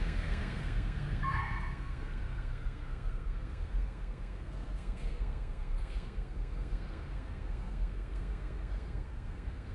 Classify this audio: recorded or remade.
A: remade